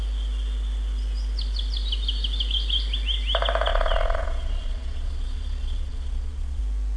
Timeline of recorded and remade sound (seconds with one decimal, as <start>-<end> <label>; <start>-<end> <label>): 0.0-3.7 recorded; 3.7-6.6 remade; 6.6-7.0 recorded